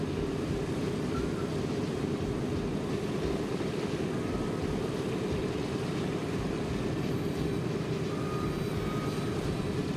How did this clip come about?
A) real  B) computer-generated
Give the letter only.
A